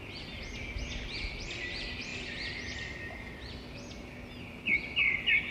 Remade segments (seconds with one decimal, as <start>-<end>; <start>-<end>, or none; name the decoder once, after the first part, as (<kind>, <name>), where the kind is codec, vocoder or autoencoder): none